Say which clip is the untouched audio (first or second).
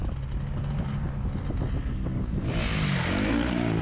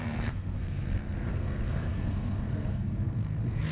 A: first